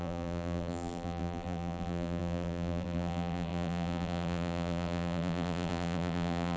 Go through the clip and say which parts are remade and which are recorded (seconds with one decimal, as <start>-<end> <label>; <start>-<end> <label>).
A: 0.0-6.6 remade